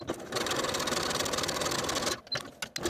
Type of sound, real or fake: real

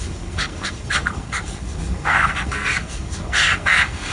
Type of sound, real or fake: fake